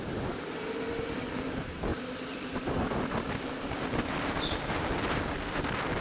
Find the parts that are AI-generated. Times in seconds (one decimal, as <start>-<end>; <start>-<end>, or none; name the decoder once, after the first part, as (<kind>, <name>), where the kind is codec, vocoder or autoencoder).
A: 1.9-4.6 (vocoder, BigVGAN v2)